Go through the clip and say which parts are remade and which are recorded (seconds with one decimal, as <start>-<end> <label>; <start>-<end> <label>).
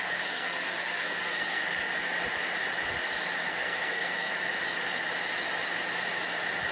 0.0-1.6 remade; 1.6-3.5 recorded; 3.5-4.3 remade; 4.3-6.7 recorded